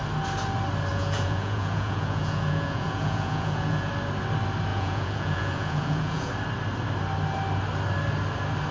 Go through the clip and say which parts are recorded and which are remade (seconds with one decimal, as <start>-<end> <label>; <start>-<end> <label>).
0.0-0.9 recorded; 0.9-3.9 remade; 3.9-4.7 recorded; 4.7-6.3 remade; 6.3-8.7 recorded